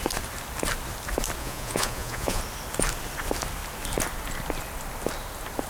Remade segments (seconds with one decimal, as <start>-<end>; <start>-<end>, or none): 1.4-2.4